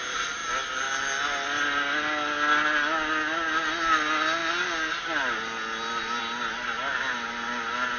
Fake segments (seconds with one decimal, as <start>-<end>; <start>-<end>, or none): none